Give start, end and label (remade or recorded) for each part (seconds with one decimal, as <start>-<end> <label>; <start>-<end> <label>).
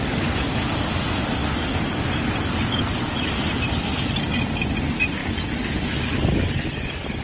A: 0.0-7.2 recorded